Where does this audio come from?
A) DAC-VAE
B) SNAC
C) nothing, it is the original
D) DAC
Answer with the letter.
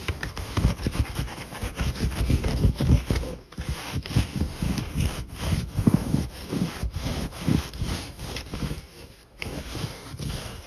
D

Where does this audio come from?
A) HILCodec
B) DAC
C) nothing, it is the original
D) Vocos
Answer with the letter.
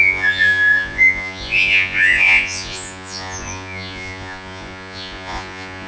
D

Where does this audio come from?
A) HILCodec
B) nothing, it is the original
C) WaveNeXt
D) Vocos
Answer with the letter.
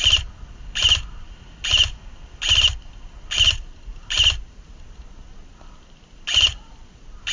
B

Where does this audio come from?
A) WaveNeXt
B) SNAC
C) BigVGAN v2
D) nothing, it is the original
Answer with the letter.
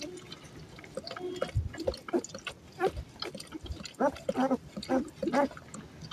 D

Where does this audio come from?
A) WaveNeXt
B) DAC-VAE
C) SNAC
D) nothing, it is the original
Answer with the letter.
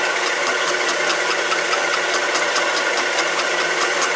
D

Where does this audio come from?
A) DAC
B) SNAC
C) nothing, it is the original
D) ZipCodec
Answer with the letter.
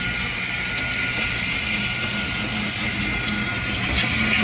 C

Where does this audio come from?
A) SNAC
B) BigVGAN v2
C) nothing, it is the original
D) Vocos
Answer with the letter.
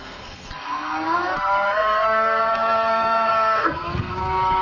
A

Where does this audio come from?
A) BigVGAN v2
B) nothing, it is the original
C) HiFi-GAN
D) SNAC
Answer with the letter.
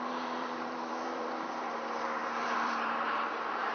A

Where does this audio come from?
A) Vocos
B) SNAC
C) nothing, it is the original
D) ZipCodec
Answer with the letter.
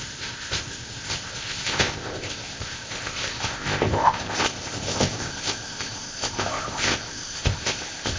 D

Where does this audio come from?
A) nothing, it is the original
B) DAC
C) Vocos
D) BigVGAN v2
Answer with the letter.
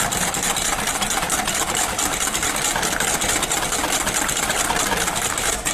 A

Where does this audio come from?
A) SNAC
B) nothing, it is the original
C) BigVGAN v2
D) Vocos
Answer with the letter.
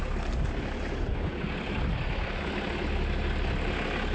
B